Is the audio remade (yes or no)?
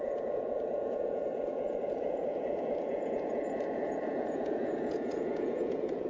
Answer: yes